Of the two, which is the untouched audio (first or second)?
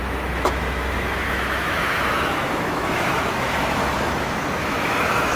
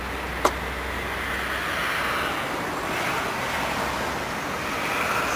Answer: second